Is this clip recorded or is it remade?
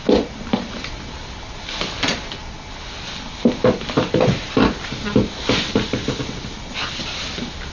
recorded